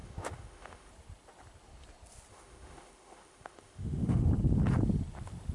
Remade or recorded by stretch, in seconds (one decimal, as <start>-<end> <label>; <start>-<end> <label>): 0.0-0.9 remade; 0.9-2.3 recorded; 2.3-4.3 remade; 4.3-5.5 recorded